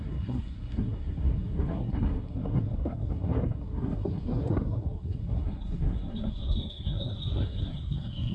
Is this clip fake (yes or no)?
yes